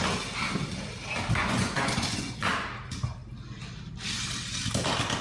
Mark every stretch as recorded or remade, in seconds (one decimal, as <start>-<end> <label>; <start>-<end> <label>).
0.0-1.4 recorded; 1.4-2.5 remade; 2.5-5.2 recorded